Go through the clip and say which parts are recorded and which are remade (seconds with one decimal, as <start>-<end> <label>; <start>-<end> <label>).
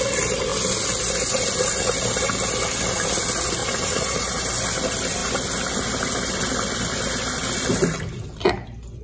0.0-3.6 recorded; 3.6-4.4 remade; 4.4-9.0 recorded